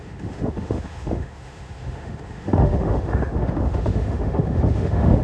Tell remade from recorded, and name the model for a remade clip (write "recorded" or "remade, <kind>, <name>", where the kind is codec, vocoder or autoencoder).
remade, autoencoder, DAC-VAE